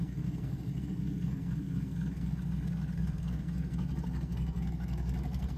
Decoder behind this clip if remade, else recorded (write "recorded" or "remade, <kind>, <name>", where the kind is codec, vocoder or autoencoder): remade, codec, SNAC